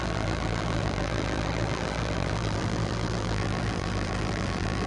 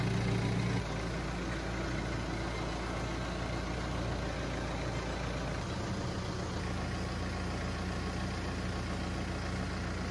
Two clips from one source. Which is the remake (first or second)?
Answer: first